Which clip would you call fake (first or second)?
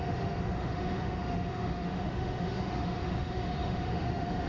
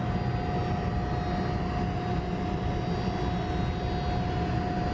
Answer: first